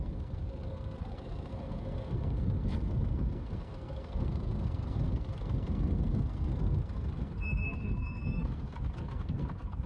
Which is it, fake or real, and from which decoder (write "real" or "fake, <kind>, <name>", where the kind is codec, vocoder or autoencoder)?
fake, codec, SNAC